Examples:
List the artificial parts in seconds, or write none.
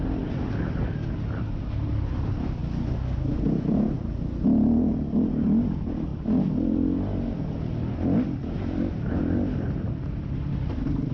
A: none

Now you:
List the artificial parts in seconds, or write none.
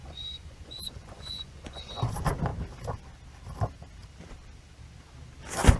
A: 0.0-2.0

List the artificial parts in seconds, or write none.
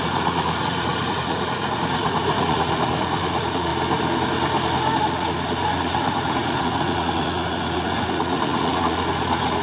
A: 0.0-3.7; 5.0-9.6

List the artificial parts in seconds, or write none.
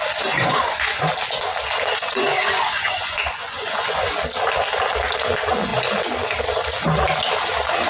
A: 0.4-1.1; 2.0-4.1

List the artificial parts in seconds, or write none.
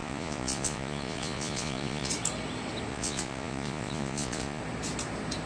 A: 0.0-2.1; 2.9-4.6